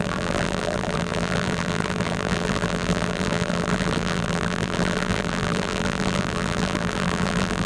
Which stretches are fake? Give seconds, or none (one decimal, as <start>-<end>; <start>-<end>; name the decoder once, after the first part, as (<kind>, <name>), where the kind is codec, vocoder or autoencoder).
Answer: 0.0-7.7 (vocoder, BigVGAN v2)